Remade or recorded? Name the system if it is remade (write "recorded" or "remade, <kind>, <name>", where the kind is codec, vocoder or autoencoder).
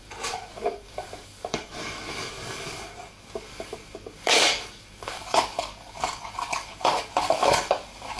remade, codec, DAC